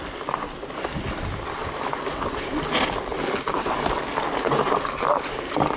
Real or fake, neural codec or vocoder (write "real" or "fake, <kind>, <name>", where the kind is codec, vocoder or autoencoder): real